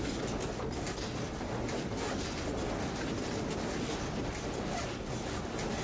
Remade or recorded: recorded